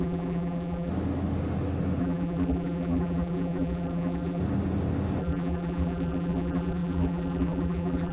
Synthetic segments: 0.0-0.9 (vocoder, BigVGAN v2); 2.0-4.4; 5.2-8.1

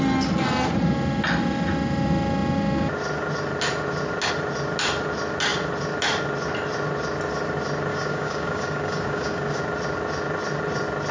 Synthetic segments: 7.9-9.6 (codec, DAC)